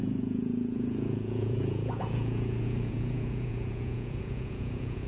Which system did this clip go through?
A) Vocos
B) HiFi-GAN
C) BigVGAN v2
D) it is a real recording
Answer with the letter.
A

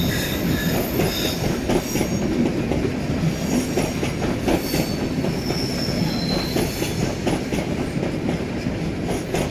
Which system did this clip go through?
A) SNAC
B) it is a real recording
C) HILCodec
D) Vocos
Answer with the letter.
B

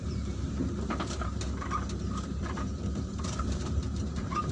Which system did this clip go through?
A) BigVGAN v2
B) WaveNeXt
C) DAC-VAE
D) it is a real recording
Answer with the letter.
A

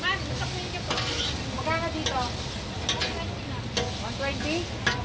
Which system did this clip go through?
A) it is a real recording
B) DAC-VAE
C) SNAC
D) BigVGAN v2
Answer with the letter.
A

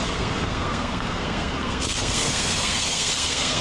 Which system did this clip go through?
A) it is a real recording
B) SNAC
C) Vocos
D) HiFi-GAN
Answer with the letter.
B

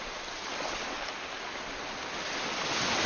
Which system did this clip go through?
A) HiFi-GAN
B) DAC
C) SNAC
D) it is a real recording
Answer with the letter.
D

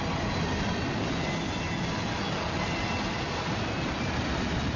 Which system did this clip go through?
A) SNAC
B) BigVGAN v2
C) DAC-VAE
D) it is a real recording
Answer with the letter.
D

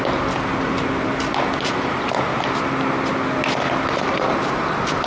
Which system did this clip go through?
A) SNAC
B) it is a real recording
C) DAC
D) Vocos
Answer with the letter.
B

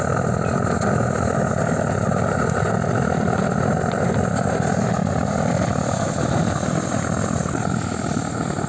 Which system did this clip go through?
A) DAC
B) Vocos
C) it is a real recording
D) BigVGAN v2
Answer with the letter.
C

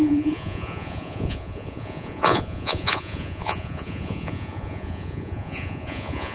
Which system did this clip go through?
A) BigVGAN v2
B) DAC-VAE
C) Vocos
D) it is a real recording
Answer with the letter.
C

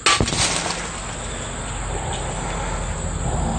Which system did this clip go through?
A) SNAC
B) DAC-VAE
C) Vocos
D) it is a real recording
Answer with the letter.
D